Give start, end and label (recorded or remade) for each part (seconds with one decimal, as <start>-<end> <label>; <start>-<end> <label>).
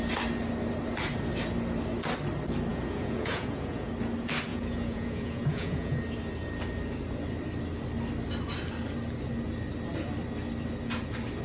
0.0-2.7 recorded; 2.7-3.9 remade; 3.9-4.5 recorded; 4.5-6.0 remade; 6.0-11.4 recorded